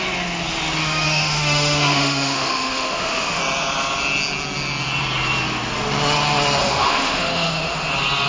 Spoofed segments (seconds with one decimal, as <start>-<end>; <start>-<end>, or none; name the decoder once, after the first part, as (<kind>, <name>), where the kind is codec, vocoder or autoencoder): 0.8-3.4 (autoencoder, DAC-VAE); 6.6-7.9